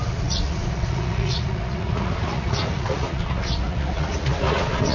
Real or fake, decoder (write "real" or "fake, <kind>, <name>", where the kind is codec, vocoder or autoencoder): fake, vocoder, Vocos